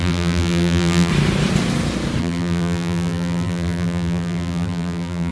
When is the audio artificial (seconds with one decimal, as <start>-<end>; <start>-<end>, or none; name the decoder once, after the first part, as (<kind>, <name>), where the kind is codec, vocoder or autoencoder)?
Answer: 0.0-1.1 (vocoder, BigVGAN v2); 2.2-5.3